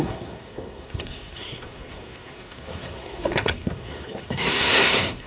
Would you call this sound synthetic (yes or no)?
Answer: yes